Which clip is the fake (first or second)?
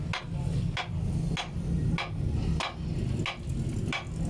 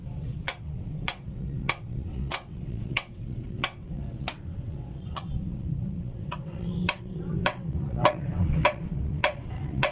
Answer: second